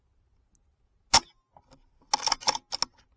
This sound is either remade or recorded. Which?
recorded